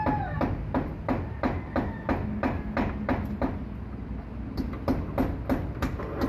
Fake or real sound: real